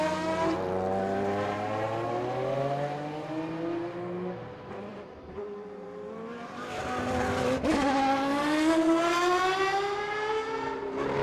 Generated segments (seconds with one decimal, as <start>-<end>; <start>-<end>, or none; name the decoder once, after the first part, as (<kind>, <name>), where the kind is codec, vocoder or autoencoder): 4.9-6.6 (vocoder, BigVGAN v2)